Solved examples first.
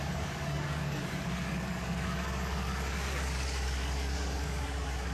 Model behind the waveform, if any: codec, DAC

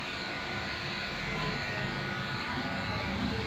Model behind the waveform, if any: codec, DAC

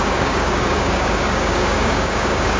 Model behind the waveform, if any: codec, DAC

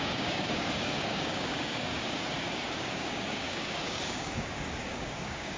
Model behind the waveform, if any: codec, DAC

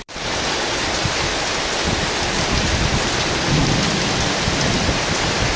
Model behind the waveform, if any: none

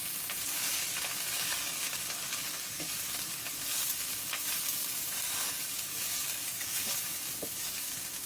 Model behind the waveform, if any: codec, DAC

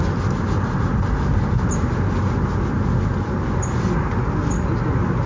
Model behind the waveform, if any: none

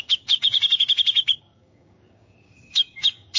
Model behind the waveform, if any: codec, DAC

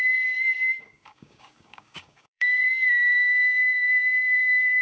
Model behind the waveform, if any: codec, DAC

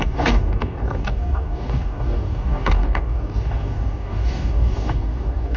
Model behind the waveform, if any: codec, DAC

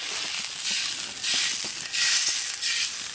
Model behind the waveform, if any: none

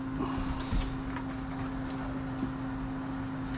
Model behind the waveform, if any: none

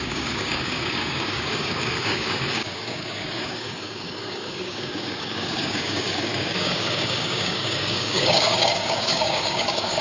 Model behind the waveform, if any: codec, DAC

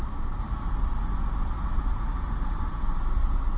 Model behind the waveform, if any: none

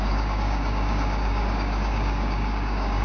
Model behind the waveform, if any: codec, DAC